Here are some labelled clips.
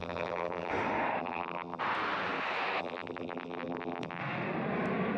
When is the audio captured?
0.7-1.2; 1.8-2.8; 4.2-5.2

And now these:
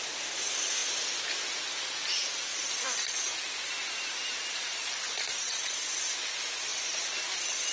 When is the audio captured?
0.0-2.5; 5.2-7.7

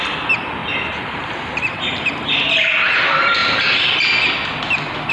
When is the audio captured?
0.0-0.6; 2.1-5.1

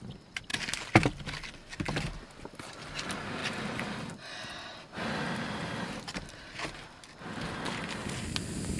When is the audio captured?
0.0-0.5; 2.3-8.8

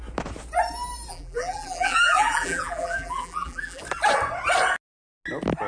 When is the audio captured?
0.0-1.1; 3.8-5.7

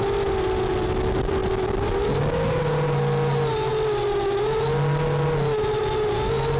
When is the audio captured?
0.0-6.6

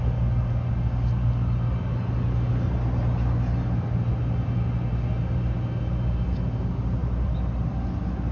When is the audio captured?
0.0-7.0; 7.9-8.3

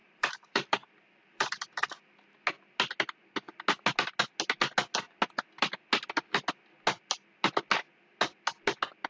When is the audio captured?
2.3-9.1